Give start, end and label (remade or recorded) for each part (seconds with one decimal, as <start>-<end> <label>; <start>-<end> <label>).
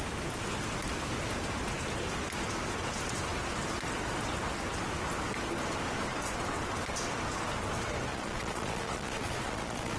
0.0-8.1 recorded; 8.1-10.0 remade